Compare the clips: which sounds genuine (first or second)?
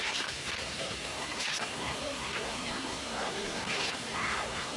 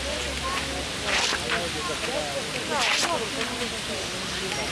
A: second